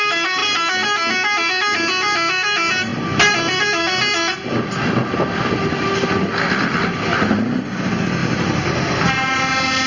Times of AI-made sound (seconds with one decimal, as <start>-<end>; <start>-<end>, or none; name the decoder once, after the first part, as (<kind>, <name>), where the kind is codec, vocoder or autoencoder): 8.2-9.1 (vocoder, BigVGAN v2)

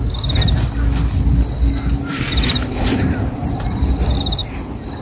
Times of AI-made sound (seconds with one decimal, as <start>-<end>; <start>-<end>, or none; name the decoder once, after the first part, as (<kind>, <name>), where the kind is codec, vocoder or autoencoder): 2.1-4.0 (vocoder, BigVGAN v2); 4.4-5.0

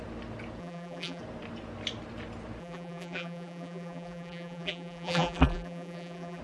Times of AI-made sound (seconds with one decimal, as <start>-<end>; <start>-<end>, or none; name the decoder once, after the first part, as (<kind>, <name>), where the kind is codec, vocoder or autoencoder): 0.6-1.2 (vocoder, BigVGAN v2); 2.6-6.4

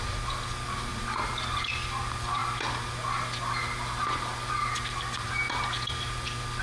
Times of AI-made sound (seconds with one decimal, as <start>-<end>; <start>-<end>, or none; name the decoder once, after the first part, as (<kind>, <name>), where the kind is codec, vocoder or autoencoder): none